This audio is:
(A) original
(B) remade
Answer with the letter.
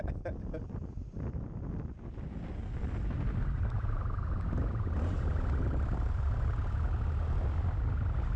A